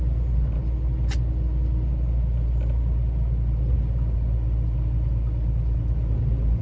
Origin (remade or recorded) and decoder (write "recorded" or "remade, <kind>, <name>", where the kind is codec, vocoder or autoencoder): recorded